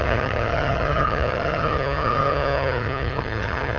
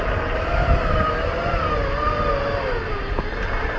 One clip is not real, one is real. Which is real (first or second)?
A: second